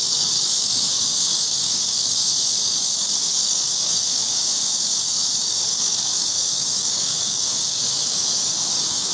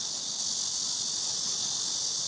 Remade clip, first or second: first